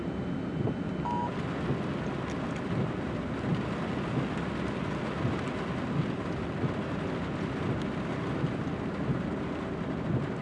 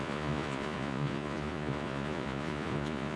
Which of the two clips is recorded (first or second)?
first